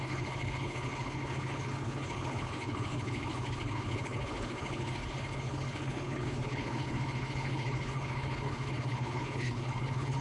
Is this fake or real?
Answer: fake